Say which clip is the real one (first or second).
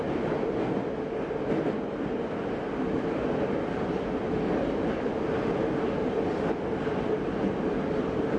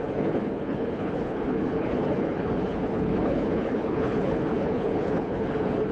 first